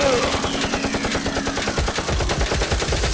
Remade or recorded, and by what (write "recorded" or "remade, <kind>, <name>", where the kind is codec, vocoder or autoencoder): recorded